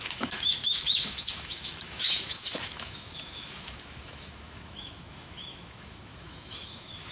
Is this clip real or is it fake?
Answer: fake